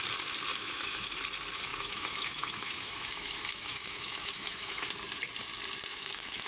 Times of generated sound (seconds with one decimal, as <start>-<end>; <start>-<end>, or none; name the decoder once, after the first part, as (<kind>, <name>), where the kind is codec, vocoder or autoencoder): 0.5-1.2 (autoencoder, DAC-VAE); 1.7-4.9; 5.9-6.5